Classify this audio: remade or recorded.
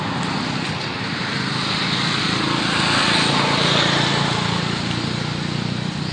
recorded